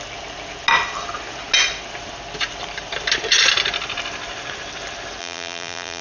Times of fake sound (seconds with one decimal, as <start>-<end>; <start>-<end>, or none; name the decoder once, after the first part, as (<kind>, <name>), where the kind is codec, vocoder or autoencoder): 5.2-6.0 (vocoder, BigVGAN v2)